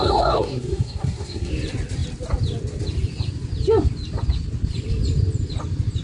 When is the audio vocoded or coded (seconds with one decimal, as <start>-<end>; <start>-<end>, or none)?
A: 0.0-1.5